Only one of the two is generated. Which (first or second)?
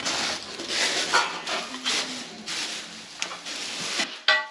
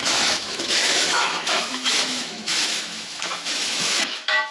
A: second